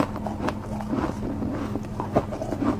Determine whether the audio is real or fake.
real